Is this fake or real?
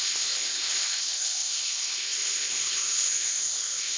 fake